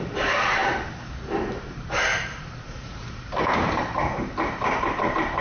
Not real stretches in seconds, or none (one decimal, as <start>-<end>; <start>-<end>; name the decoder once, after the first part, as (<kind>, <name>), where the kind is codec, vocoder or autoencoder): 0.0-5.4 (vocoder, BigVGAN v2)